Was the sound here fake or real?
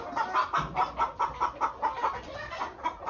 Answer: real